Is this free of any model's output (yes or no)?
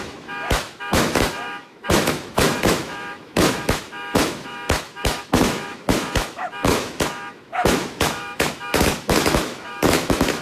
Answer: no